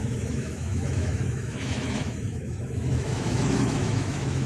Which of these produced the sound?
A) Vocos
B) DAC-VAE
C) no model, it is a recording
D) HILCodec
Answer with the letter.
B